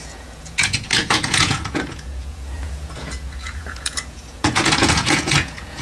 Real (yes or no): no